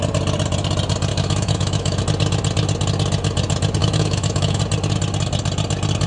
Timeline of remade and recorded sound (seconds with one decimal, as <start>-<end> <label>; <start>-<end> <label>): 0.0-1.1 recorded; 1.1-2.0 remade; 2.0-3.8 recorded; 3.8-4.6 remade; 4.6-6.1 recorded